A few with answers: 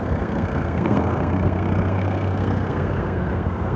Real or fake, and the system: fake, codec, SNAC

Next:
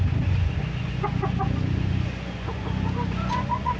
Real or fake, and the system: fake, vocoder, Vocos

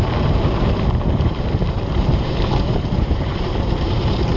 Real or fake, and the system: fake, vocoder, BigVGAN v2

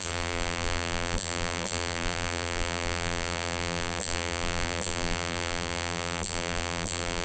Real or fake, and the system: fake, vocoder, BigVGAN v2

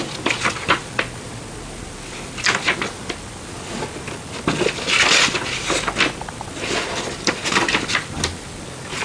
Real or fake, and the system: real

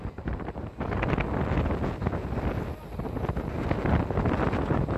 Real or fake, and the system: real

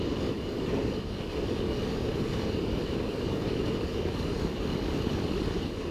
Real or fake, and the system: fake, codec, DAC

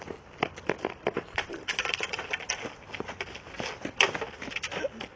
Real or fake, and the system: real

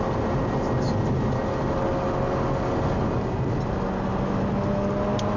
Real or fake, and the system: real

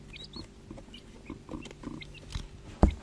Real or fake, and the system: real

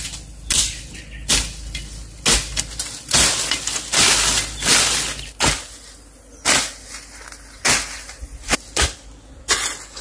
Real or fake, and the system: real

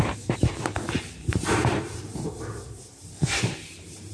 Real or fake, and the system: fake, vocoder, BigVGAN v2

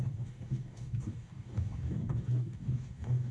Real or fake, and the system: fake, codec, DAC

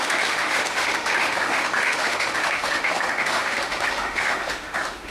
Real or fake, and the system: fake, autoencoder, DAC-VAE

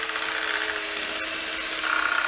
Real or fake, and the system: real